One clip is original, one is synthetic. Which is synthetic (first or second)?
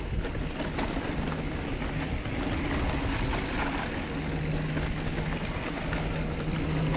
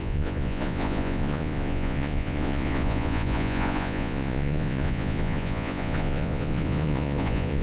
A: second